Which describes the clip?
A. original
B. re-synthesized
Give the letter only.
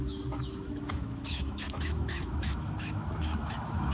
B